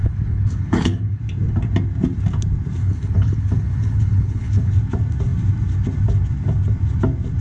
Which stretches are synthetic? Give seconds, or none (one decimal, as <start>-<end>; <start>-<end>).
0.0-1.2; 2.8-4.7